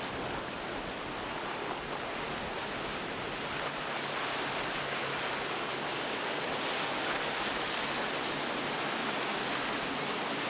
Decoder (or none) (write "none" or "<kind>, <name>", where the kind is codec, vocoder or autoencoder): none